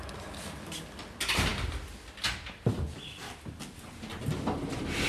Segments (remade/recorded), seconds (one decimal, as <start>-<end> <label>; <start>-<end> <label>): 0.0-5.1 recorded